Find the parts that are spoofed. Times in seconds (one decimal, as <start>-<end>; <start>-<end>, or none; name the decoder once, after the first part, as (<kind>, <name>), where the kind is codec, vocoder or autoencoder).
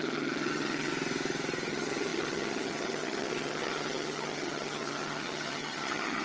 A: 0.0-0.9 (vocoder, HiFi-GAN); 1.7-6.2